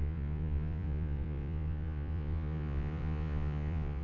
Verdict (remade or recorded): remade